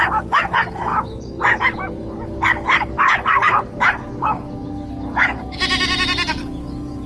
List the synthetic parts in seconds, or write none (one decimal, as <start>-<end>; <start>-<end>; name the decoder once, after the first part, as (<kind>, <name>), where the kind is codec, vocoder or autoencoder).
0.0-5.6 (codec, DAC); 6.3-7.1